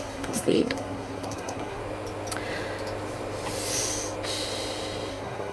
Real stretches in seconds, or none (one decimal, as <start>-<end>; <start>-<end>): 1.8-5.1